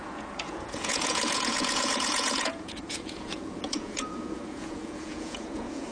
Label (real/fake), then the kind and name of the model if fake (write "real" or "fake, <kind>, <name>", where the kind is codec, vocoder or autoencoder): fake, vocoder, Vocos